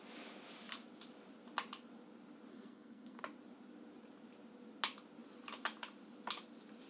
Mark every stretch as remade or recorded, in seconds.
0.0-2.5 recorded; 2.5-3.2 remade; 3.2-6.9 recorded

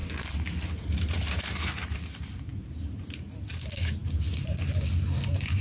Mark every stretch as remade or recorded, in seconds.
0.0-5.6 recorded

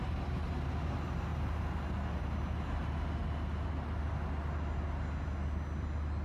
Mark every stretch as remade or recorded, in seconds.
0.0-6.2 recorded

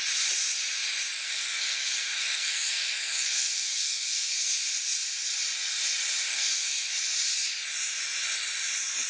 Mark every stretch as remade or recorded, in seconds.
0.0-1.2 recorded; 1.2-4.6 remade; 4.6-6.3 recorded; 6.3-6.9 remade; 6.9-9.1 recorded